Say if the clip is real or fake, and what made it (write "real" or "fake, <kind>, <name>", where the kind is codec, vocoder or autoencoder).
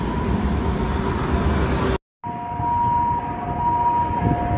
real